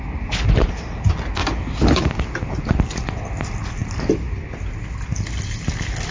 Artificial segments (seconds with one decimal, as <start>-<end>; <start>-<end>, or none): none